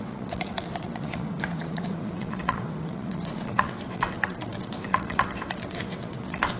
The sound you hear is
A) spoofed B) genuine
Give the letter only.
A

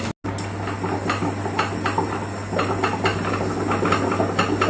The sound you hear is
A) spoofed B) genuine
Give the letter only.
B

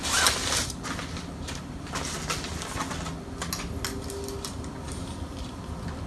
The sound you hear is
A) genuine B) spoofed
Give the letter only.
A